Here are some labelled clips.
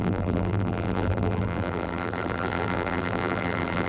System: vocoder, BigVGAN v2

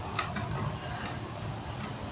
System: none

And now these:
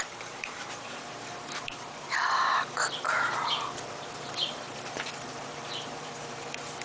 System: vocoder, BigVGAN v2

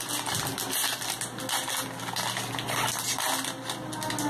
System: none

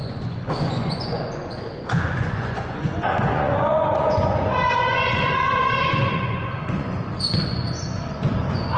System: vocoder, Vocos